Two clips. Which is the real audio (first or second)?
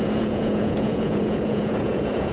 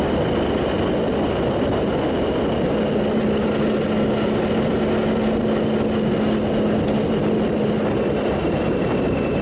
second